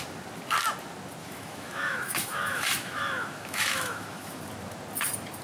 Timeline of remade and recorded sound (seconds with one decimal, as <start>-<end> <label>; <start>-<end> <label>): 0.0-1.2 recorded; 1.2-4.4 remade; 4.4-5.4 recorded